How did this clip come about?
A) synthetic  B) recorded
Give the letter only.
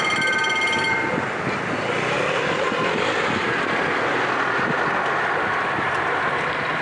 B